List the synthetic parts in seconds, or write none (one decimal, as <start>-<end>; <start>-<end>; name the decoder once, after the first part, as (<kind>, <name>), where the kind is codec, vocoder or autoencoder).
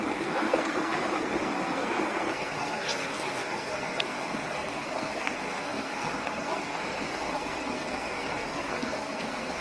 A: 0.0-9.6 (codec, SNAC)